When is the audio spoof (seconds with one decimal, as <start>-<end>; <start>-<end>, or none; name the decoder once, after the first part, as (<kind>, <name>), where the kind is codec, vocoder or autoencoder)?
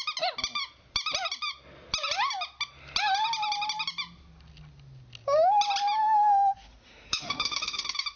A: 6.0-8.2 (autoencoder, DAC-VAE)